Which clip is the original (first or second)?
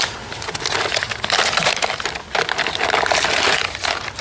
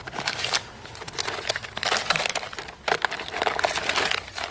second